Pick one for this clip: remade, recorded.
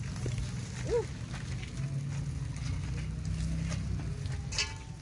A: recorded